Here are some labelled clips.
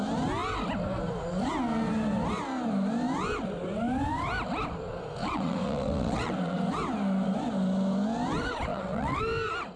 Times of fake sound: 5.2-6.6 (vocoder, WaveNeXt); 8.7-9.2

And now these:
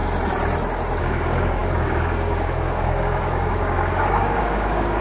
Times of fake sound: 1.0-5.0 (codec, DAC)

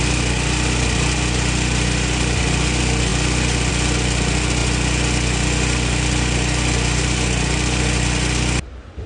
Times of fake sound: none

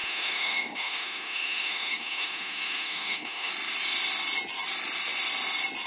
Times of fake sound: 0.0-3.5 (autoencoder, DAC-VAE)

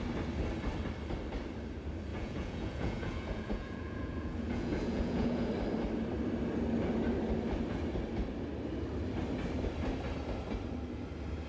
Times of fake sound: 2.1-5.5 (vocoder, Vocos)

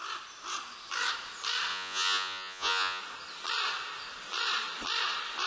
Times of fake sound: 1.7-3.0 (vocoder, Vocos)

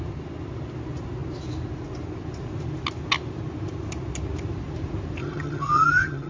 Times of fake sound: 5.2-6.3 (vocoder, HiFi-GAN)